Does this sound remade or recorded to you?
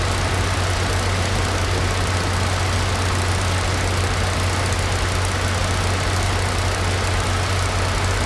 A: recorded